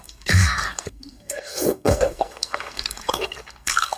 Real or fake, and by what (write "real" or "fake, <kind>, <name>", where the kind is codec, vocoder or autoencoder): fake, codec, SNAC